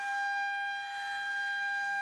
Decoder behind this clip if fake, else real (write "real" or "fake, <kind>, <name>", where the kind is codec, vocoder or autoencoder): fake, codec, SNAC